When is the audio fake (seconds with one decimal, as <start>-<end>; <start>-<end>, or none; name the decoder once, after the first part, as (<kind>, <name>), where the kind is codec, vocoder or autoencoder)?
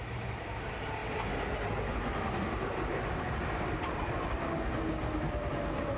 none